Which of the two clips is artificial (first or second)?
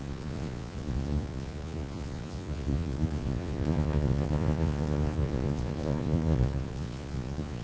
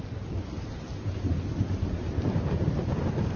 first